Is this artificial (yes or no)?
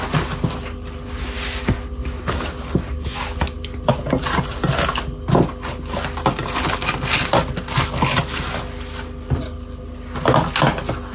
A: no